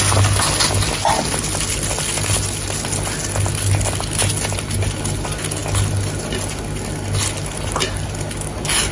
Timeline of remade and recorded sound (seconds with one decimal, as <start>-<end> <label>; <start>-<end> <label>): 0.0-8.9 recorded